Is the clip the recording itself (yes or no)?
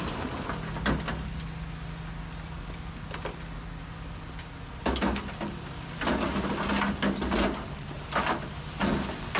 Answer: yes